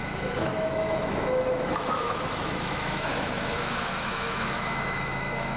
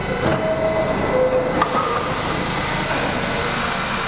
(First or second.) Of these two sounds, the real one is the second